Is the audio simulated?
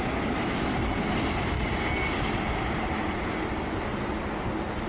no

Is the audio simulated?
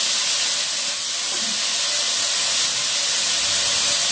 no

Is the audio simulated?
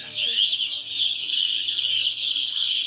yes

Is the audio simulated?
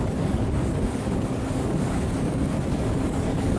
yes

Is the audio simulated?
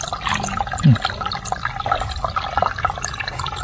no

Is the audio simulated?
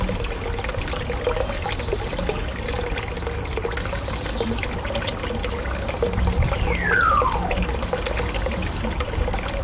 no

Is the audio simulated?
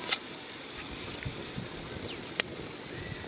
no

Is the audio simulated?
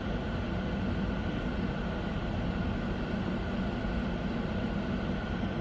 no